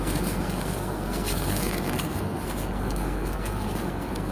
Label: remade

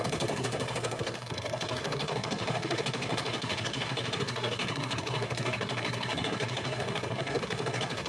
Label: remade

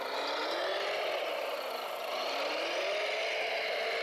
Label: recorded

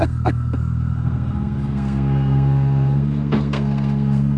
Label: remade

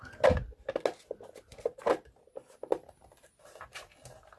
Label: recorded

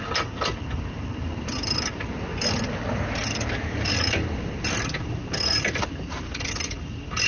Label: recorded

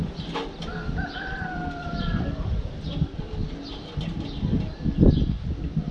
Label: recorded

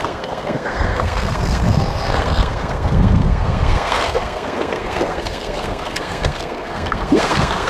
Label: remade